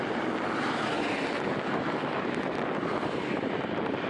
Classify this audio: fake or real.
real